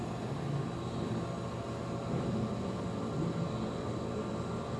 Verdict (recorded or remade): recorded